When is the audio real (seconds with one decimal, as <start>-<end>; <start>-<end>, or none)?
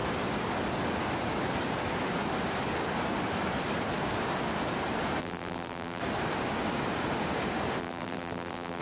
0.0-5.2; 6.0-7.8